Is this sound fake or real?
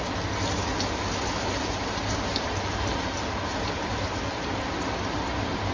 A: real